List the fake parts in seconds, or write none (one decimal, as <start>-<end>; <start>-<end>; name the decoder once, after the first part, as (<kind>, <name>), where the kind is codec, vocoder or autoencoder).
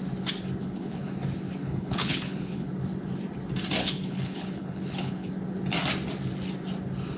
0.6-1.1 (codec, HILCodec); 1.6-2.7; 3.8-5.3